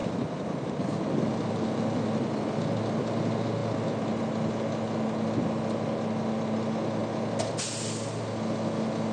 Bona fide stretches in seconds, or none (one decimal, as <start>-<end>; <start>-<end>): 0.0-9.1